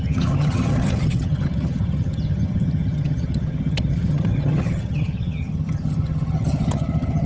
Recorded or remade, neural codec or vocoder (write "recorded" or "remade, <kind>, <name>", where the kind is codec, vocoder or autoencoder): remade, vocoder, HiFi-GAN